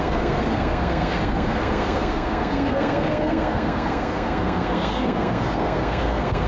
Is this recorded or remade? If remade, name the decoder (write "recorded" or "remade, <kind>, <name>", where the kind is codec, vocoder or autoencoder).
remade, codec, SNAC